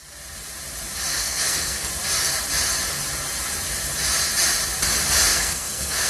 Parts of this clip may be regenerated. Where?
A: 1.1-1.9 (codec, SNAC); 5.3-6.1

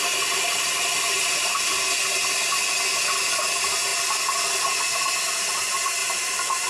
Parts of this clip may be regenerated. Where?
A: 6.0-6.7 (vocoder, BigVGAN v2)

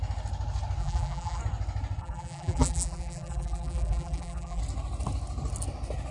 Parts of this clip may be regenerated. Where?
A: 0.8-1.4 (vocoder, BigVGAN v2); 2.0-4.6

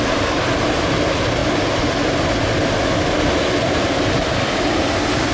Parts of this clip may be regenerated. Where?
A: none

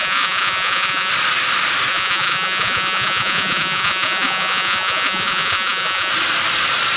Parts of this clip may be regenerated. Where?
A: 0.0-1.1 (vocoder, Vocos); 1.9-6.1

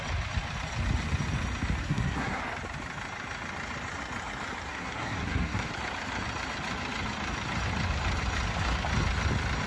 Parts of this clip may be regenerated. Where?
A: 1.8-2.4 (codec, SNAC); 4.7-5.7

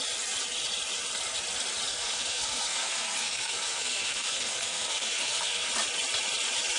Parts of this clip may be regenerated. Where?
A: 1.9-5.7 (codec, SNAC)

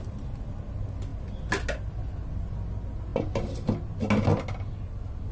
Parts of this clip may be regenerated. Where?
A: none